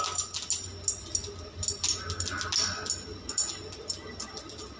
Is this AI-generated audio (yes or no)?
no